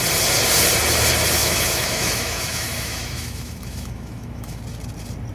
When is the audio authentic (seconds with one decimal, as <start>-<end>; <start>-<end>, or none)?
0.0-1.4; 4.6-5.3